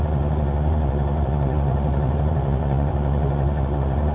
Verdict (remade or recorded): remade